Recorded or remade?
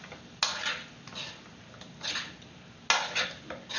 recorded